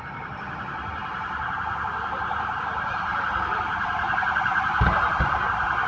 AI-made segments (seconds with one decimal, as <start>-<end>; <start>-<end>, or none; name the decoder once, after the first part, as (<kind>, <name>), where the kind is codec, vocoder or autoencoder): 0.0-5.9 (vocoder, BigVGAN v2)